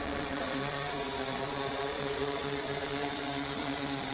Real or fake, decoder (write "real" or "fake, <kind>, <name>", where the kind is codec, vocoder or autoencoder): fake, vocoder, Vocos